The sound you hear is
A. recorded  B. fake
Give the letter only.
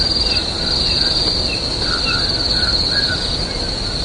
A